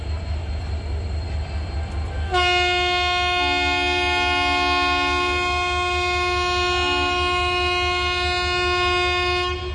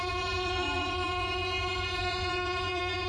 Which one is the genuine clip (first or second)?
first